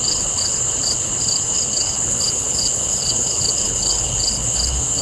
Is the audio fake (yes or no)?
yes